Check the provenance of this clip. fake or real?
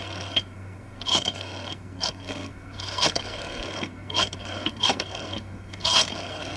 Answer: fake